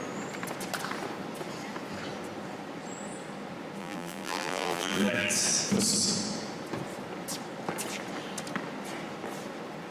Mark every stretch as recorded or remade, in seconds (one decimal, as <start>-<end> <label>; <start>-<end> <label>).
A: 0.0-3.8 recorded; 3.8-5.3 remade; 5.3-9.9 recorded